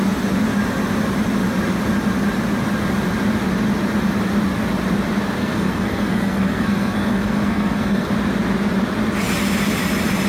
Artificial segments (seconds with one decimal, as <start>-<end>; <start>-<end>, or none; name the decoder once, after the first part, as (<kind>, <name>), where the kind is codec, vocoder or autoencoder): 5.4-8.1 (codec, SNAC)